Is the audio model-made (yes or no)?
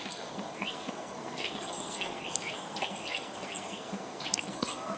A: yes